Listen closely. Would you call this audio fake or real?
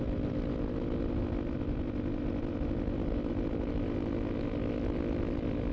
real